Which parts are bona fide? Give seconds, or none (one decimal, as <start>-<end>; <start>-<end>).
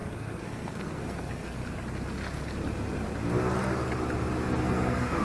1.6-4.5